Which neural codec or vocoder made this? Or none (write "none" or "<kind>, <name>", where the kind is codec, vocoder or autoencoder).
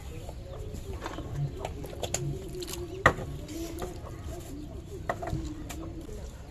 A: none